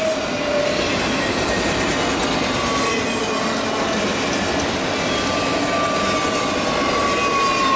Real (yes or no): yes